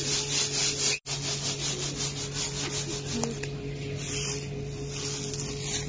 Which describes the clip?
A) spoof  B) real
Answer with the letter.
B